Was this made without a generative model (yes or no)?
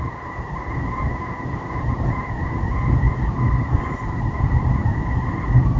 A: yes